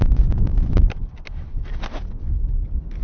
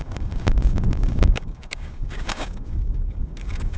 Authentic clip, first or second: first